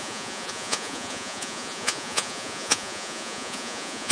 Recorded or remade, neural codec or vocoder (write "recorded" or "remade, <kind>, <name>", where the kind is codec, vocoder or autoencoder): remade, vocoder, Vocos